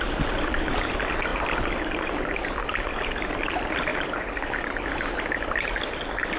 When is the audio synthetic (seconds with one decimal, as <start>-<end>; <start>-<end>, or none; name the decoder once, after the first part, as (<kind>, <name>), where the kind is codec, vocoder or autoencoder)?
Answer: 1.3-2.3 (vocoder, BigVGAN v2); 3.9-5.7